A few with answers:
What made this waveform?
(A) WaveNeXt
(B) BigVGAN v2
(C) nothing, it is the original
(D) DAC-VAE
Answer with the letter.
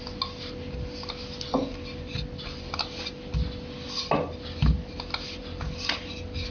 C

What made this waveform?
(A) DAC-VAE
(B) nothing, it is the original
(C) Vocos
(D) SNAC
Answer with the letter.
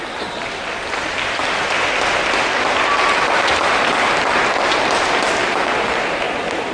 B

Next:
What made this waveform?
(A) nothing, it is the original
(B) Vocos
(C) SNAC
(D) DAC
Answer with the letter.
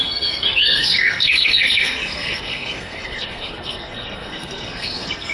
C